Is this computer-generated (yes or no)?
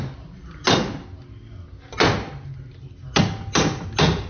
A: no